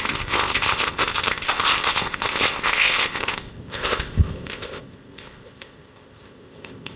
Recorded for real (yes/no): no